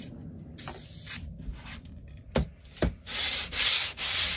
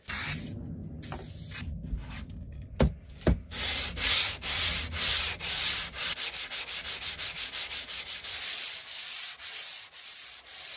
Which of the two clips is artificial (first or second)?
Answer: first